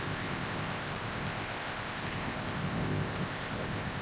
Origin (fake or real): fake